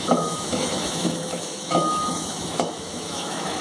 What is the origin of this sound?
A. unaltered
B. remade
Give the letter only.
B